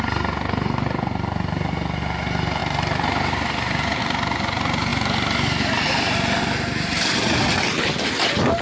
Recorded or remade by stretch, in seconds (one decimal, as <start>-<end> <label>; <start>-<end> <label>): 0.0-8.6 recorded